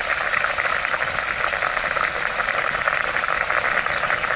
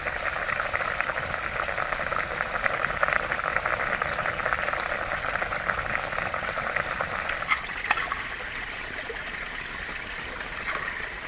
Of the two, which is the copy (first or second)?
second